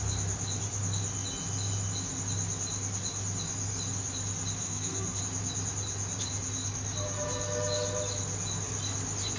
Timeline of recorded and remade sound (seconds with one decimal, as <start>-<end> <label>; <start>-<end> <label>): 0.0-4.6 recorded; 4.6-5.2 remade; 5.2-9.4 recorded

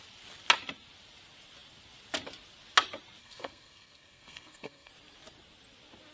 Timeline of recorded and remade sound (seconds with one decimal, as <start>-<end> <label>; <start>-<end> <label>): 0.0-3.2 recorded; 3.2-4.9 remade; 4.9-6.1 recorded

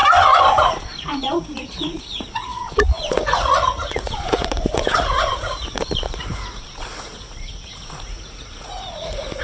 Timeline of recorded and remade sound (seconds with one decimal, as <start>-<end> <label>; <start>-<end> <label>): 0.0-0.6 recorded; 0.6-9.4 remade

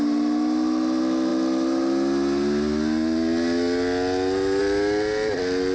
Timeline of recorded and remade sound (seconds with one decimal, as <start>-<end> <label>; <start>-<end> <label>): 0.0-5.7 recorded

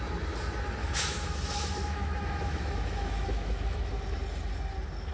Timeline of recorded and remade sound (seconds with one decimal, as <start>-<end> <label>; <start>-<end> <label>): 0.0-0.8 recorded; 0.8-3.9 remade; 3.9-5.1 recorded

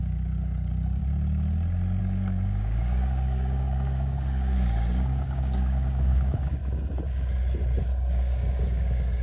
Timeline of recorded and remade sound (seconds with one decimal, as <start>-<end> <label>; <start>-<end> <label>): 0.0-1.0 remade; 1.0-2.0 recorded; 2.0-6.6 remade; 6.6-7.8 recorded; 7.8-9.2 remade

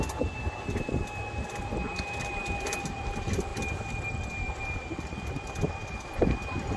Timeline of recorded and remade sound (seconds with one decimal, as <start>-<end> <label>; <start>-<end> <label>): 0.0-6.8 recorded